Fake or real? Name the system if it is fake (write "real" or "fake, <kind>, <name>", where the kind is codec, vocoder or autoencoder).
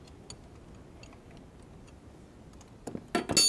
real